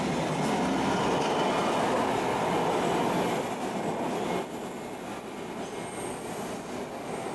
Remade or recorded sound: recorded